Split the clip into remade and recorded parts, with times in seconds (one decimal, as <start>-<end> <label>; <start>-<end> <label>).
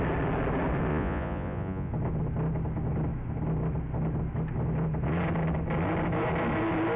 0.0-0.9 recorded; 0.9-1.9 remade; 1.9-7.0 recorded